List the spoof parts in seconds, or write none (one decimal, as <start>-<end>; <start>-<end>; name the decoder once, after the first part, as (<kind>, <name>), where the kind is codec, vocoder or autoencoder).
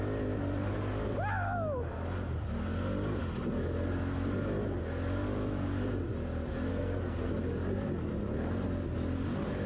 6.7-7.3 (codec, SNAC)